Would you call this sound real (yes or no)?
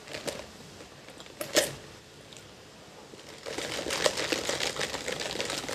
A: yes